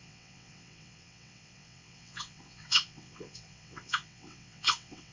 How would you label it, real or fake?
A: fake